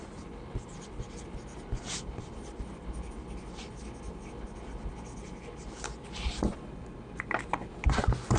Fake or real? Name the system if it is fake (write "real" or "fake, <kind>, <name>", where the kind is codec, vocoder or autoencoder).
real